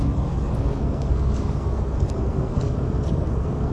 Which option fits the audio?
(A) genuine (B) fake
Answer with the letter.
B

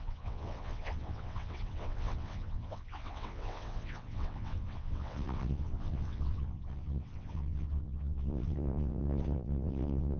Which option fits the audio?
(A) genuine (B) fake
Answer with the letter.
B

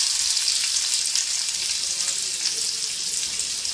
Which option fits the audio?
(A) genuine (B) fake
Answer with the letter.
A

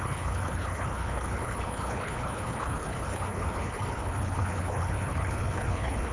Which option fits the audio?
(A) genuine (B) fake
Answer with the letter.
B